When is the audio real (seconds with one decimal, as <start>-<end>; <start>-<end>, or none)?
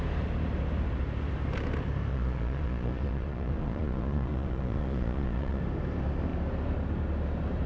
0.0-2.1; 5.6-7.7